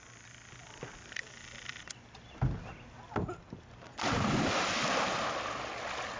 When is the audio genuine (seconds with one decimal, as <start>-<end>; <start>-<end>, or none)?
0.0-6.2